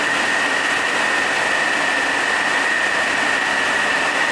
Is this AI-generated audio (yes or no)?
no